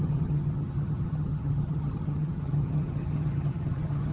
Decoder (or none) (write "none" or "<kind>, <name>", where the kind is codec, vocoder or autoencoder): vocoder, HiFi-GAN